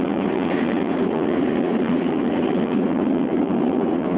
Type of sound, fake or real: fake